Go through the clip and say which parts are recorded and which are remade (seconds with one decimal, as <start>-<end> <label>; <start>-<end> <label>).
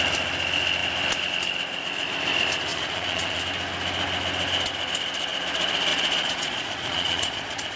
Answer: 0.0-2.7 recorded; 2.7-3.4 remade; 3.4-5.9 recorded; 5.9-7.8 remade